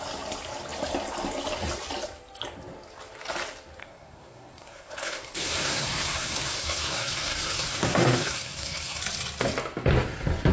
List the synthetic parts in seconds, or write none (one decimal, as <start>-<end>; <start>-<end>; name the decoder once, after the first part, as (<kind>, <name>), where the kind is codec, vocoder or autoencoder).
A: 3.8-9.0 (codec, SNAC)